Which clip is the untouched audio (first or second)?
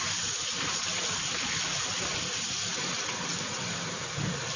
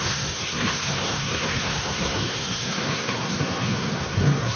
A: first